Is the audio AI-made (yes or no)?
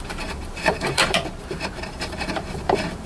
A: yes